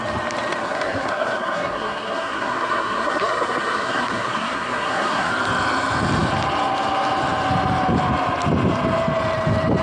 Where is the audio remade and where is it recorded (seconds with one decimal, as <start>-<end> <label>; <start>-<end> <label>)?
0.0-0.6 recorded; 0.6-5.3 remade; 5.3-9.8 recorded